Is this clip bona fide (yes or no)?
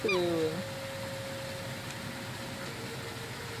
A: yes